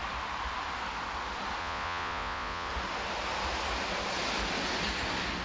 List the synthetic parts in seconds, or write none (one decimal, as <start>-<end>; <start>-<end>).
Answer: 1.6-2.7